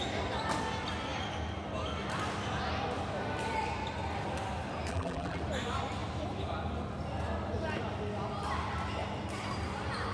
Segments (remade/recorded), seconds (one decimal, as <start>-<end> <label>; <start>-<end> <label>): 0.0-4.9 recorded; 4.9-5.4 remade; 5.4-10.1 recorded